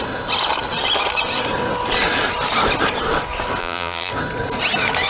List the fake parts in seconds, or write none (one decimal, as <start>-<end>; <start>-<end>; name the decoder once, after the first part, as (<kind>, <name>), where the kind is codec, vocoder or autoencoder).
3.6-4.1 (vocoder, BigVGAN v2)